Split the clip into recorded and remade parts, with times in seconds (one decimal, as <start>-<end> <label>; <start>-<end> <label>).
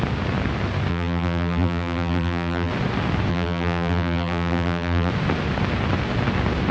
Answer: 0.0-0.9 recorded; 0.9-2.7 remade; 2.7-3.3 recorded; 3.3-5.1 remade; 5.1-6.7 recorded